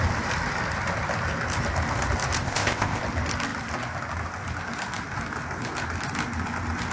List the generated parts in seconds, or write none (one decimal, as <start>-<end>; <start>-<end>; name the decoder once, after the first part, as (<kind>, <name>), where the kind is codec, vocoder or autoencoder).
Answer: 2.4-3.0 (codec, ZipCodec)

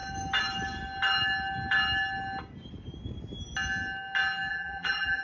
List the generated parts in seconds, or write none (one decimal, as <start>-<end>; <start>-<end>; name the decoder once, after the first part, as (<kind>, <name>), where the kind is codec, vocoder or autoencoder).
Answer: 4.5-5.2 (vocoder, BigVGAN v2)